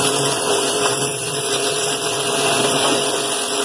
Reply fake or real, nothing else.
fake